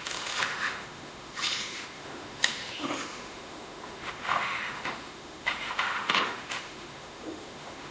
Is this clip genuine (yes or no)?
no